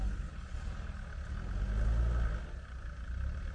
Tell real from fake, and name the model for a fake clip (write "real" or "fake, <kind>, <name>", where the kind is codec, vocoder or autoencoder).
real